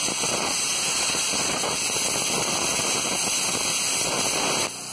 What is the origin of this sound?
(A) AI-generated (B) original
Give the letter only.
B